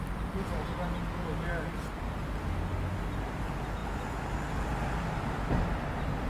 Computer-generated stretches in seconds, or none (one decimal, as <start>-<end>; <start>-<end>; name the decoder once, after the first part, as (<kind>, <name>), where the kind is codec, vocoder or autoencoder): none